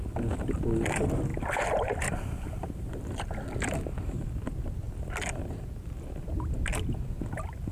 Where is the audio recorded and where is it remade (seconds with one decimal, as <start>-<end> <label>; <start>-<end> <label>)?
0.0-1.3 recorded; 1.3-3.2 remade; 3.2-7.7 recorded